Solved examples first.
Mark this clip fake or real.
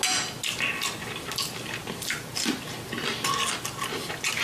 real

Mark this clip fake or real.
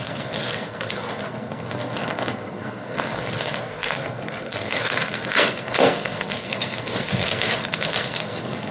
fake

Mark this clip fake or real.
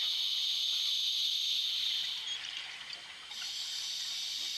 real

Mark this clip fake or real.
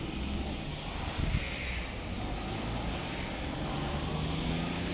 real